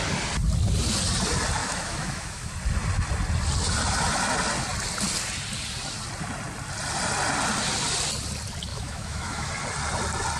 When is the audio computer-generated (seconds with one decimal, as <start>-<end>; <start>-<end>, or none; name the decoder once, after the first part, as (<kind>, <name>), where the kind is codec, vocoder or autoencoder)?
1.6-2.5 (autoencoder, DAC-VAE); 8.7-9.5